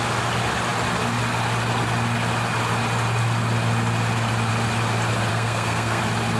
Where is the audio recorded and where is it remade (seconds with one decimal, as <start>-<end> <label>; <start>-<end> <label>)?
0.0-5.3 recorded; 5.3-6.0 remade; 6.0-6.4 recorded